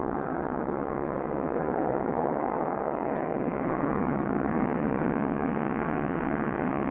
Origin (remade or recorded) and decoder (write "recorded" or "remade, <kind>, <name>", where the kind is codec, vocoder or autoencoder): remade, vocoder, WaveNeXt